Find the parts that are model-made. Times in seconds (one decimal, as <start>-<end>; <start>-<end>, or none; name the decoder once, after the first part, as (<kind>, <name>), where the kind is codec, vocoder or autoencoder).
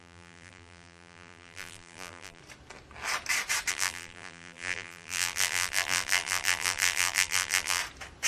0.0-2.4 (vocoder, BigVGAN v2); 3.7-7.8